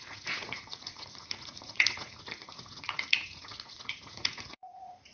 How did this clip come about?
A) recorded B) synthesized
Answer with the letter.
B